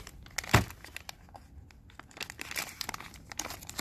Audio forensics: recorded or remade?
recorded